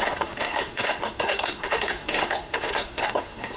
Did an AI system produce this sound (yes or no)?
yes